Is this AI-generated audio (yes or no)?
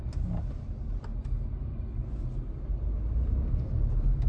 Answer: no